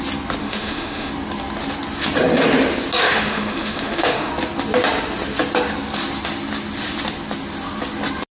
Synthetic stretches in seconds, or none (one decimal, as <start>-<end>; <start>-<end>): 0.4-1.1; 3.0-4.3